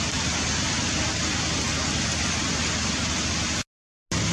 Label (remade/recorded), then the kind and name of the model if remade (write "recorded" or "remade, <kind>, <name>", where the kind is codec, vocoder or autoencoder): recorded